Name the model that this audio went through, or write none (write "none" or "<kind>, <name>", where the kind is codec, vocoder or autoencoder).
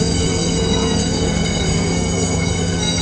codec, SNAC